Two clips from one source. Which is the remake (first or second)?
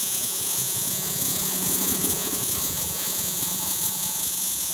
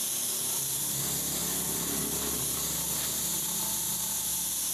first